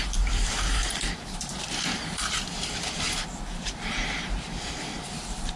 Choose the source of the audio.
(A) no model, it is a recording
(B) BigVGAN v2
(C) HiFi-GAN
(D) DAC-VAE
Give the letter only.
B